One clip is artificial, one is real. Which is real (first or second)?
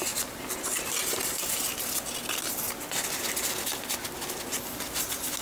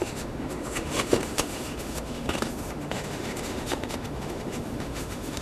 first